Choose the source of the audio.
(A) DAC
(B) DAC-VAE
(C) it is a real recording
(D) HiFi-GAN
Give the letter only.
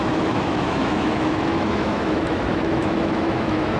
B